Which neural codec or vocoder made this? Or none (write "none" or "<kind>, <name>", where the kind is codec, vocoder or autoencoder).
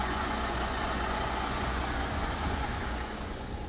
vocoder, Vocos